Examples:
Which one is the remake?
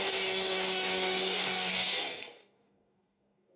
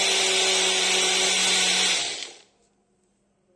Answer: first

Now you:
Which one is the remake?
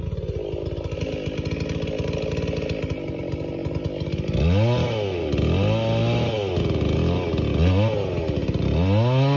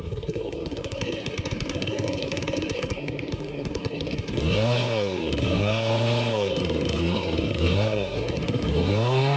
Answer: second